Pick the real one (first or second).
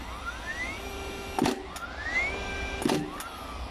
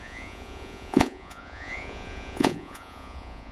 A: first